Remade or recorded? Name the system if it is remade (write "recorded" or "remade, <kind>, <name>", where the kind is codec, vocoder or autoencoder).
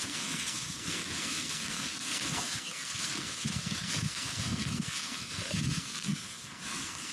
remade, codec, SNAC